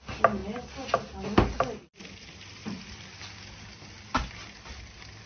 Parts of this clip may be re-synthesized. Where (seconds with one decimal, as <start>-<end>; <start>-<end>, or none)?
2.6-3.3